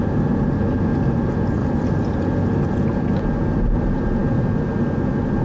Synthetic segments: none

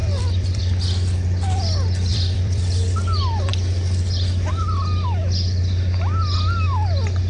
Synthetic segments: 0.0-0.6 (vocoder, BigVGAN v2); 2.1-2.6